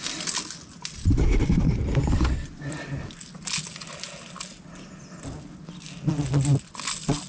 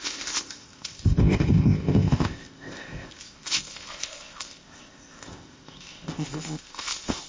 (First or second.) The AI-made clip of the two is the second